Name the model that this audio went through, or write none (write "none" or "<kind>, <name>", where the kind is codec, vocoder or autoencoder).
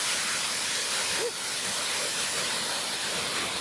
none